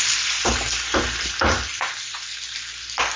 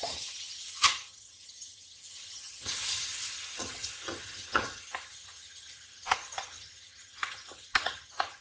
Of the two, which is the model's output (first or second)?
second